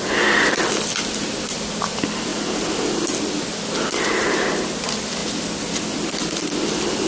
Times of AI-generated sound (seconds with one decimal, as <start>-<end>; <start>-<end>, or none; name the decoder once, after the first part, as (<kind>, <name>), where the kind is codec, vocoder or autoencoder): none